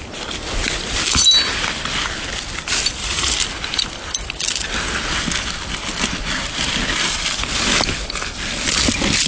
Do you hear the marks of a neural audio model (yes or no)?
no